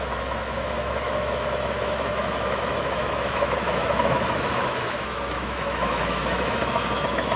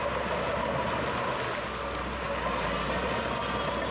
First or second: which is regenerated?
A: first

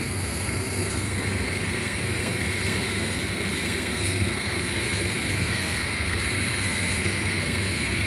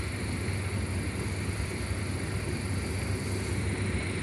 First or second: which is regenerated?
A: first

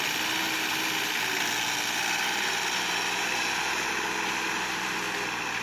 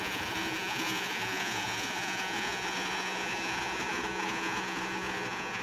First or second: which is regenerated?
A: second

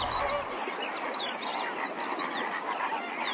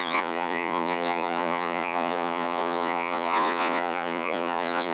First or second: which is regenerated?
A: second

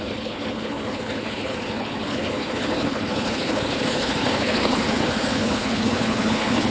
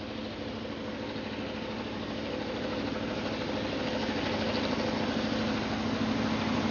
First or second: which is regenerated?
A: first